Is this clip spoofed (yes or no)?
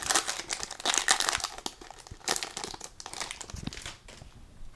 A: no